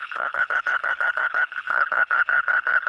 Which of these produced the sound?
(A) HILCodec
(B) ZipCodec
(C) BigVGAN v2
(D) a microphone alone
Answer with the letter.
A